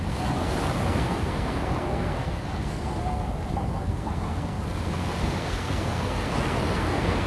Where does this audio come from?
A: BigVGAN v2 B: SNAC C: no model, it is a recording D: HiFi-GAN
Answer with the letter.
B